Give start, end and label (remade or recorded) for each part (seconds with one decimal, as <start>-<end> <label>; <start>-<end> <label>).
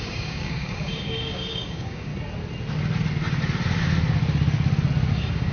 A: 0.0-2.1 remade; 2.1-5.1 recorded; 5.1-5.5 remade